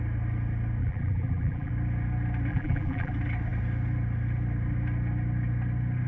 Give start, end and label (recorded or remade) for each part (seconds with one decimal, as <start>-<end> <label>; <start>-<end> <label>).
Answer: 0.0-0.8 recorded; 0.8-1.7 remade; 1.7-2.5 recorded; 2.5-3.1 remade; 3.1-6.1 recorded